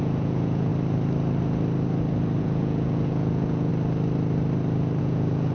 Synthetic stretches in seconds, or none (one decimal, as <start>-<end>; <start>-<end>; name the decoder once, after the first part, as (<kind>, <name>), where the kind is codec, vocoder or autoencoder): 0.0-0.7 (vocoder, Vocos); 2.4-3.7; 5.0-5.5